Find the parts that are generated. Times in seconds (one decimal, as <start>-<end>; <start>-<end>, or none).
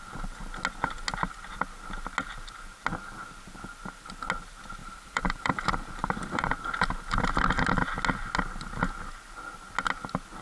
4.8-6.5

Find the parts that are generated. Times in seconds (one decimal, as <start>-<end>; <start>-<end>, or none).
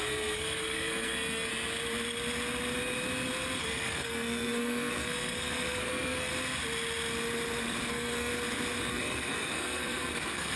0.0-1.5; 3.6-6.3; 7.9-8.3; 8.9-10.6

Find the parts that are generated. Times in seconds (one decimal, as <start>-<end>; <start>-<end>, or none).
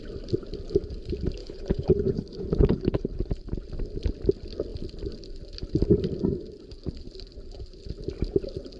1.4-3.3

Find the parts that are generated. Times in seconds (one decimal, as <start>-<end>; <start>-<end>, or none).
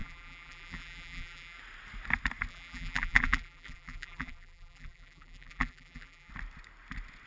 0.0-1.6; 2.5-6.3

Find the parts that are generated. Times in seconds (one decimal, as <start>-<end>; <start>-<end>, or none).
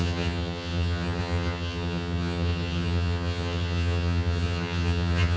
0.0-5.4